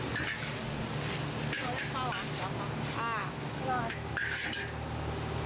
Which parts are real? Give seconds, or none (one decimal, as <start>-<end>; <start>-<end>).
0.0-3.2; 4.1-5.5